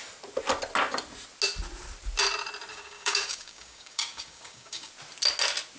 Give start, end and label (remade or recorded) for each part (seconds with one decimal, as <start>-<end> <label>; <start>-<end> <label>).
0.0-2.7 recorded; 2.7-4.9 remade; 4.9-5.8 recorded